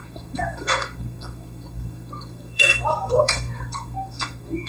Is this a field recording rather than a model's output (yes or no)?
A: no